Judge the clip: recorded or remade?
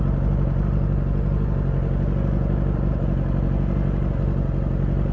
recorded